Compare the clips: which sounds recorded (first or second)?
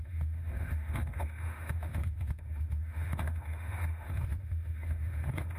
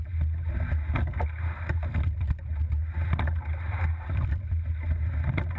second